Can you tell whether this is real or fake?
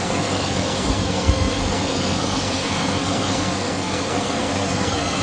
fake